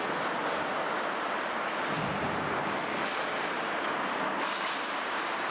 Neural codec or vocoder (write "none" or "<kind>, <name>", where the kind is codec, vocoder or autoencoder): none